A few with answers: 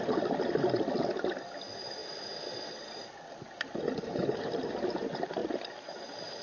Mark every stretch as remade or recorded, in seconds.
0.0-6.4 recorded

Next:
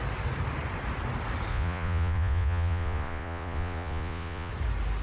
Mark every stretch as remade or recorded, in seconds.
0.0-1.5 recorded; 1.5-4.5 remade; 4.5-5.0 recorded

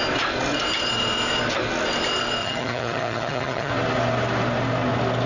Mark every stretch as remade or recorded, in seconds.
0.0-2.4 recorded; 2.4-3.7 remade; 3.7-5.3 recorded

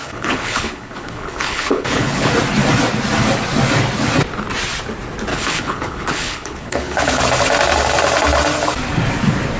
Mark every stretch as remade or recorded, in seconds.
0.0-2.3 remade; 2.3-5.3 recorded; 5.3-7.2 remade; 7.2-9.6 recorded

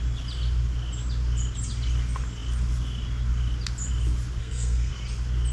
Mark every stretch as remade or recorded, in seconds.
0.0-4.4 recorded; 4.4-4.9 remade; 4.9-5.5 recorded

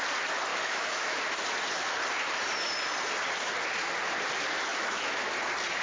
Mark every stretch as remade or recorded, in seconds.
0.0-0.5 recorded; 0.5-1.2 remade; 1.2-4.7 recorded; 4.7-5.3 remade; 5.3-5.8 recorded

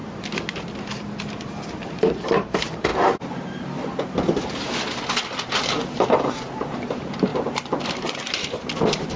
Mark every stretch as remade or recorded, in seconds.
0.0-2.0 recorded; 2.0-2.9 remade; 2.9-6.7 recorded; 6.7-9.2 remade

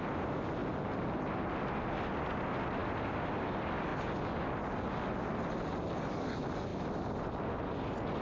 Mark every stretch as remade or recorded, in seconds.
0.0-0.6 recorded; 0.6-1.2 remade; 1.2-6.7 recorded; 6.7-7.3 remade; 7.3-8.2 recorded